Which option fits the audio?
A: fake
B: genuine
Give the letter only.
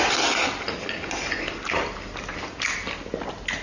B